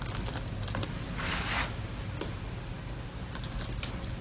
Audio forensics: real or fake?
real